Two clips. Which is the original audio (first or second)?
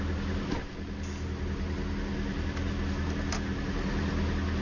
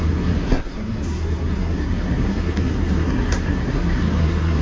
first